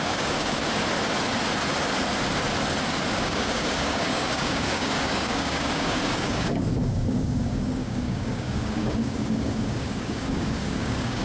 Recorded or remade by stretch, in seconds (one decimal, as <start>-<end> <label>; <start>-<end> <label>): 0.0-0.6 remade; 0.6-3.1 recorded; 3.1-11.2 remade